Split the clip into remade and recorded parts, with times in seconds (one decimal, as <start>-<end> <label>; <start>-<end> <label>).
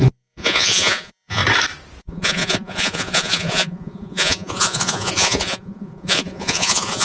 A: 0.0-1.4 remade; 1.4-2.0 recorded; 2.0-7.0 remade